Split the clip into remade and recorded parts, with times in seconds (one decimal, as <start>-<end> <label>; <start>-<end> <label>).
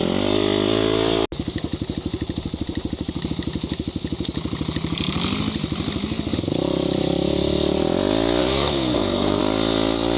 0.0-8.4 recorded; 8.4-9.4 remade; 9.4-10.2 recorded